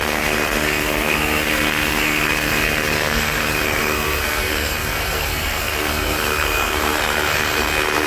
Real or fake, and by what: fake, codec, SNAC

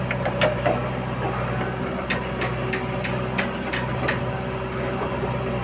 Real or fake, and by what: real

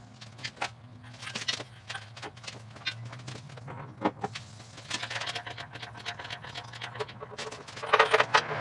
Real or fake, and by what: real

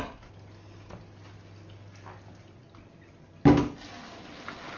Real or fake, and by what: real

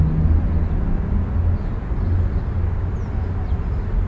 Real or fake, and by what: real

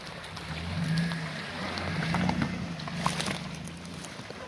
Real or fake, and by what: real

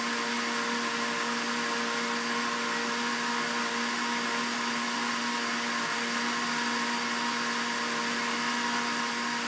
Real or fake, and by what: real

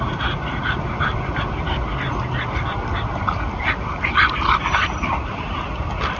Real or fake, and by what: fake, vocoder, BigVGAN v2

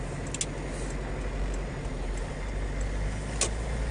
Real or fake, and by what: real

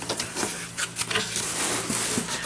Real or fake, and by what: real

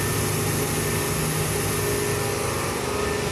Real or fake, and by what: real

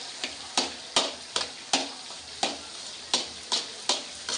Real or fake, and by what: real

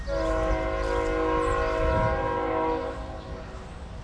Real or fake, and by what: real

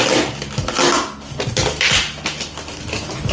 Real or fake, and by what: real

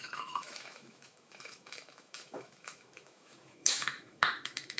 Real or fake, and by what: fake, autoencoder, DAC-VAE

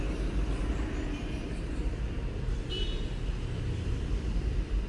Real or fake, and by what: fake, vocoder, BigVGAN v2